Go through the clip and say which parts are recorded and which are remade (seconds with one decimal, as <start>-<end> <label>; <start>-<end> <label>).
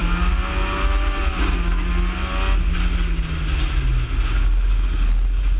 0.0-5.6 recorded